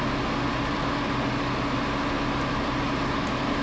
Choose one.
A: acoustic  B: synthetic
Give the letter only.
A